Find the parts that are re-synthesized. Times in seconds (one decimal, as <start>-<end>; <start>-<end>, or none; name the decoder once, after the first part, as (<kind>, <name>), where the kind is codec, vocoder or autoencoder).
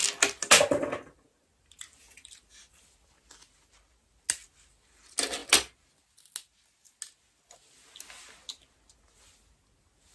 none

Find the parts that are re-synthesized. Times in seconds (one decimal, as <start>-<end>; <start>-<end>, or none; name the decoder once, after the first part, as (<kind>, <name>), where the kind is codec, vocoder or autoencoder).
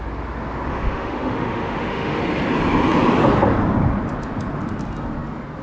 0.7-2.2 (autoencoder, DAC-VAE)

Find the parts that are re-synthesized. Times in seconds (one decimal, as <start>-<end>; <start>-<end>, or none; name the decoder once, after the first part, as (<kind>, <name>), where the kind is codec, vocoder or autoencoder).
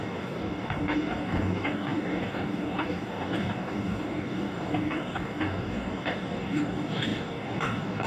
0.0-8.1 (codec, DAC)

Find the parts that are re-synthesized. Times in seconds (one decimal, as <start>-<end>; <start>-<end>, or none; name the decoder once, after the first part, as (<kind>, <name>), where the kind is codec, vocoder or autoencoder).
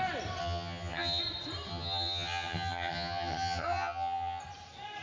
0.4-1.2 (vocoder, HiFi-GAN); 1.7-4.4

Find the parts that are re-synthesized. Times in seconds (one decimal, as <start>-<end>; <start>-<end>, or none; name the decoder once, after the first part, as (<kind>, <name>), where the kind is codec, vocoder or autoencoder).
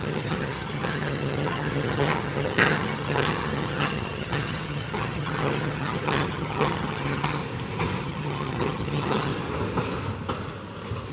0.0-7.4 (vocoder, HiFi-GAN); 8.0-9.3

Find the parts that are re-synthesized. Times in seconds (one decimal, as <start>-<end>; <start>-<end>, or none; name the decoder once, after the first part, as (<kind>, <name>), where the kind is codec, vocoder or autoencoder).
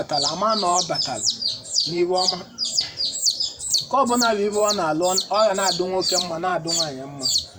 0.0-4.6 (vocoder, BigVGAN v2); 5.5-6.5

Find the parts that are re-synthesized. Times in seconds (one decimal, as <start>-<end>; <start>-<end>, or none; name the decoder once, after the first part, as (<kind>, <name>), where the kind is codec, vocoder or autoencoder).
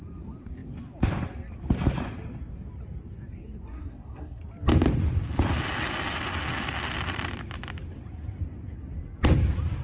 3.7-4.4 (codec, SNAC)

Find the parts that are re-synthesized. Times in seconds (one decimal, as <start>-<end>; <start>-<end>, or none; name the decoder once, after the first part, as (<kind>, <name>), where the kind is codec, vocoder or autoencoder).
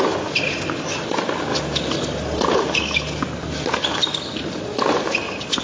none